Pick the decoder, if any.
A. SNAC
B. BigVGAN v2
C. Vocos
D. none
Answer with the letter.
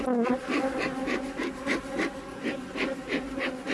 D